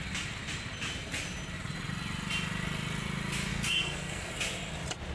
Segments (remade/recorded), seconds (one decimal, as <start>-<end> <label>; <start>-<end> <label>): 0.0-3.5 recorded; 3.5-4.3 remade; 4.3-5.1 recorded